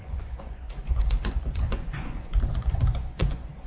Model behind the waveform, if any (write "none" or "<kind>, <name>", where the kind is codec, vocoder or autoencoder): vocoder, Vocos